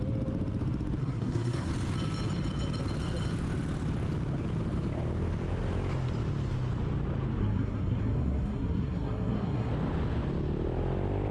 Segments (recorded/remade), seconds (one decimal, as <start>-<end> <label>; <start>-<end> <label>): 0.0-1.0 recorded; 1.0-1.7 remade; 1.7-7.4 recorded; 7.4-9.7 remade; 9.7-11.3 recorded